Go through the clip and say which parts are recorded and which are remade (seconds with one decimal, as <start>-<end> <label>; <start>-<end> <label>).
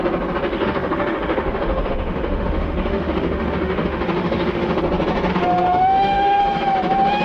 0.0-0.5 recorded; 0.5-4.8 remade; 4.8-5.3 recorded; 5.3-6.4 remade; 6.4-7.2 recorded